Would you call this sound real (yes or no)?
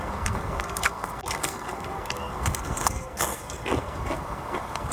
no